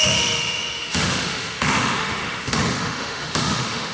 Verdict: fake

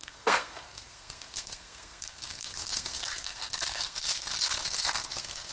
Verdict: fake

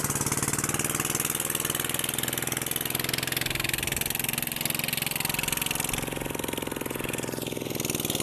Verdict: real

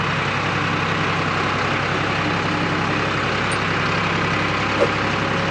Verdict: real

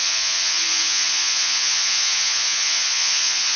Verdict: fake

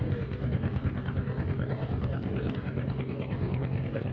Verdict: fake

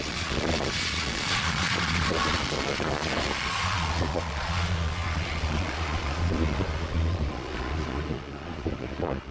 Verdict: fake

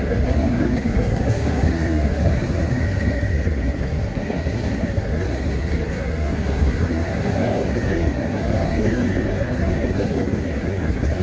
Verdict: fake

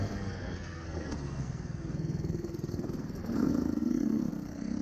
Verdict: fake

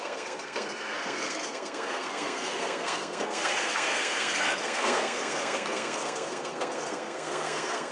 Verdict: fake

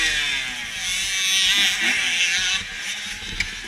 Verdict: real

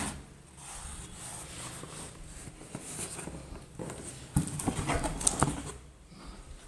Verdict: real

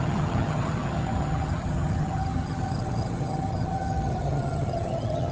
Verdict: fake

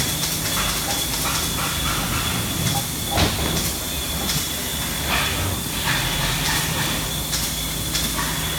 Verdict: real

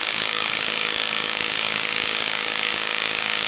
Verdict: fake